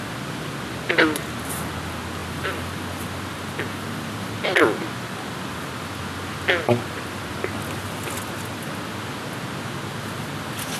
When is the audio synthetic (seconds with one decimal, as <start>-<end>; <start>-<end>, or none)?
none